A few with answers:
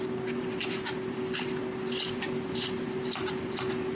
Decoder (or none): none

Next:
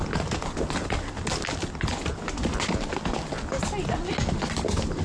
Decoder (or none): none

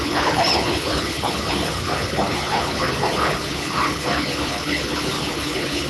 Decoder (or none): codec, HILCodec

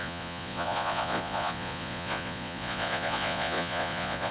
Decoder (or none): vocoder, Vocos